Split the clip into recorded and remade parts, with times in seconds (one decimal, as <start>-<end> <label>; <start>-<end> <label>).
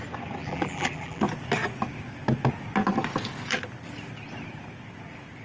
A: 0.0-0.4 recorded; 0.4-1.2 remade; 1.2-5.4 recorded